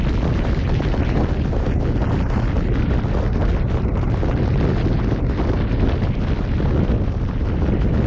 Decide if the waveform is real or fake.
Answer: real